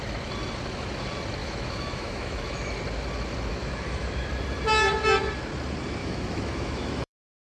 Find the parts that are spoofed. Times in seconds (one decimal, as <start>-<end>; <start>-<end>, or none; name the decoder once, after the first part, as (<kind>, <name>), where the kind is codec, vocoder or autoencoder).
1.4-2.7 (autoencoder, DAC-VAE); 3.5-4.3; 6.0-7.5